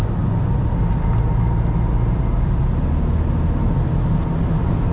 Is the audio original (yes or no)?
yes